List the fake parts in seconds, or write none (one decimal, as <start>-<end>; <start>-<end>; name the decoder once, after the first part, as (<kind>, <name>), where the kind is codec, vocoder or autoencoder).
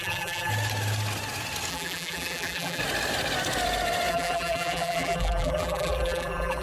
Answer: 0.0-0.5 (vocoder, BigVGAN v2); 1.7-2.8; 4.1-6.6